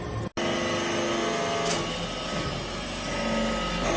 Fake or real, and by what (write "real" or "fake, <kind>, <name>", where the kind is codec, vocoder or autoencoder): real